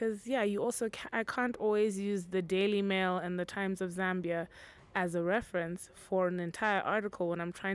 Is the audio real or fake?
real